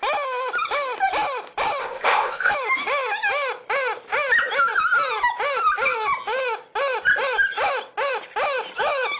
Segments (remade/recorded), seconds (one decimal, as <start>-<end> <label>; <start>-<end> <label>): 0.0-1.8 recorded; 1.8-2.5 remade; 2.5-9.2 recorded